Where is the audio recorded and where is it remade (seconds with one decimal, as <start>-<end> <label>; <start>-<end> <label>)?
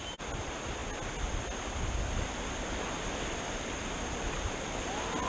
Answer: 0.0-5.3 recorded